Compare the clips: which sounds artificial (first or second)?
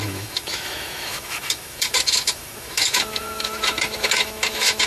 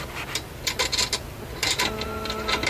first